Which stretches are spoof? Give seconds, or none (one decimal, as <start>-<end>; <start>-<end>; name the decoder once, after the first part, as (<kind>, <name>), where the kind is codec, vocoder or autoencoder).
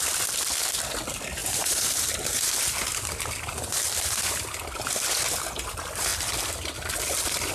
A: 1.4-1.9 (vocoder, BigVGAN v2)